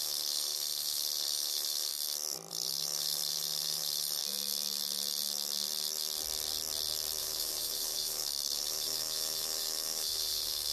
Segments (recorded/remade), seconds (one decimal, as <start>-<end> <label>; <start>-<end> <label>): 0.0-1.9 remade; 1.9-2.5 recorded; 2.5-4.2 remade; 4.2-7.2 recorded; 7.2-10.7 remade